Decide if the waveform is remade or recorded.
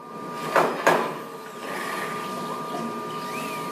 recorded